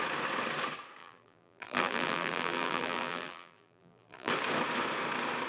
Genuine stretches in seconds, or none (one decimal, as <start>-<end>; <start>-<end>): 0.0-1.0; 4.3-5.5